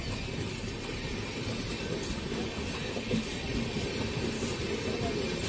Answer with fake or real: real